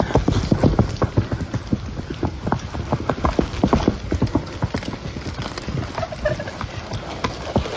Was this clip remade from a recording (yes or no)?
no